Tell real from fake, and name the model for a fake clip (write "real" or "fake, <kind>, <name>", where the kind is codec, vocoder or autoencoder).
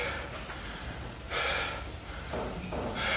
real